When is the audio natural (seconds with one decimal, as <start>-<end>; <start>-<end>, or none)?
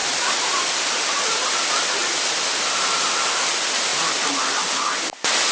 0.0-5.5